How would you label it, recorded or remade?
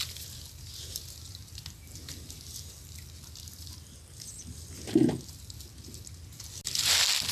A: recorded